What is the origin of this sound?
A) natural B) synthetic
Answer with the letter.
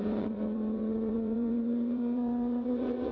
B